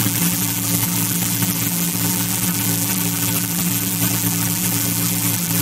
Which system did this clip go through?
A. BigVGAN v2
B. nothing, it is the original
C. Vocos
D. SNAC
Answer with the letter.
A